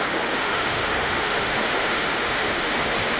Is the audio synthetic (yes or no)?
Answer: yes